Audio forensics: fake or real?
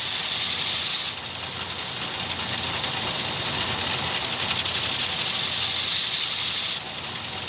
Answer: real